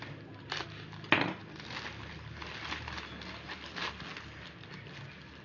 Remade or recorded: recorded